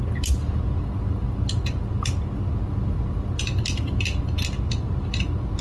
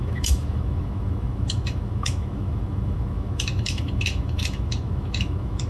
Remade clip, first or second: second